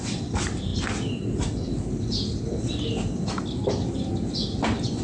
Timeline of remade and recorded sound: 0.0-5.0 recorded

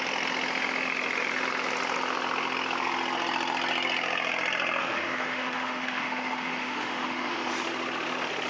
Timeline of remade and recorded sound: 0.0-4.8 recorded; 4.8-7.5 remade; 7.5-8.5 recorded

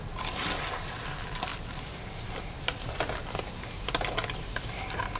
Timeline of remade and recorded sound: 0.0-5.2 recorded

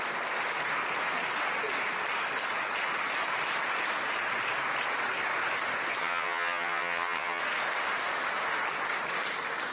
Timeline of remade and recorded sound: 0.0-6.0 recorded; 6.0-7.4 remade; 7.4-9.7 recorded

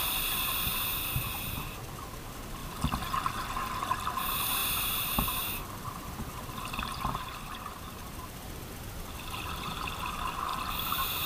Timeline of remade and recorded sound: 0.0-2.6 recorded; 2.6-3.2 remade; 3.2-4.6 recorded; 4.6-9.5 remade; 9.5-10.5 recorded; 10.5-11.3 remade